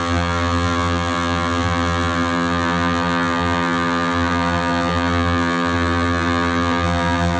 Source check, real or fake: fake